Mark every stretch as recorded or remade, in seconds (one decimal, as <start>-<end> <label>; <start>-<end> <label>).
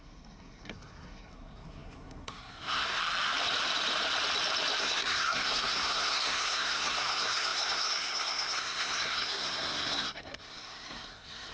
0.0-3.0 remade; 3.0-4.8 recorded; 4.8-11.5 remade